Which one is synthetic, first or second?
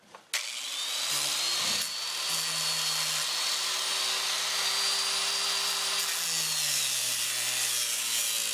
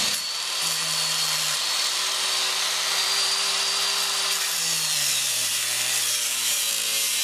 second